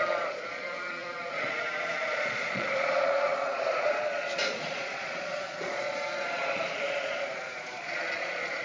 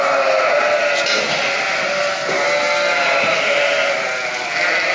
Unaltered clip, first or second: second